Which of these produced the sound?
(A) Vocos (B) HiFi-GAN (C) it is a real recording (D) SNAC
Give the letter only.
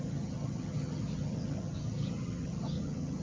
B